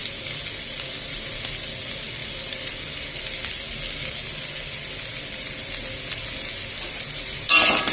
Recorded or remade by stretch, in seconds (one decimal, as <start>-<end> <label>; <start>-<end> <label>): 0.0-7.9 recorded